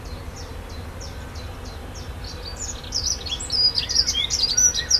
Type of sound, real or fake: real